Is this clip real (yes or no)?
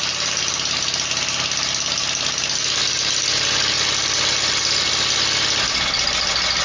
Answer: yes